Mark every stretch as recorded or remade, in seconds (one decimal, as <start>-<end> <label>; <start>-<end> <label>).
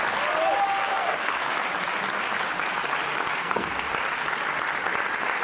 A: 0.0-0.8 recorded; 0.8-1.5 remade; 1.5-3.4 recorded; 3.4-3.9 remade; 3.9-5.4 recorded